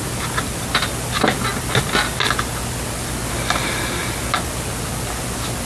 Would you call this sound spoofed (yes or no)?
no